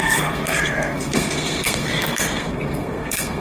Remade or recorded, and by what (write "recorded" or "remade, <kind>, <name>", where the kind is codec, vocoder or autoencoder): remade, codec, SNAC